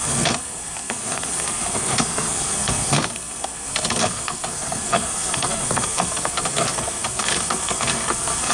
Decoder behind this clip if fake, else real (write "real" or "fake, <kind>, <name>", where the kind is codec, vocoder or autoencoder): fake, codec, SNAC